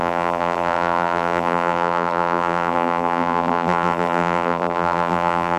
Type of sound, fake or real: fake